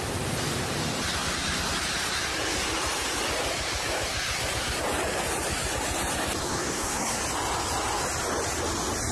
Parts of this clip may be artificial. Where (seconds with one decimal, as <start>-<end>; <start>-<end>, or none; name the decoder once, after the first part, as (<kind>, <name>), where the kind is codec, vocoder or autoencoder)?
6.4-7.2 (codec, SNAC)